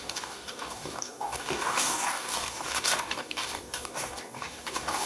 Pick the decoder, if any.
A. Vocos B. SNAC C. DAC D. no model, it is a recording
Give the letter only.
C